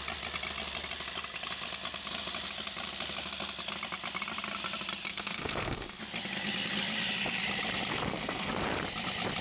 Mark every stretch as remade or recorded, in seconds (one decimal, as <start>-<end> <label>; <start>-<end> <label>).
0.0-5.1 recorded; 5.1-6.0 remade; 6.0-7.9 recorded; 7.9-8.5 remade; 8.5-9.4 recorded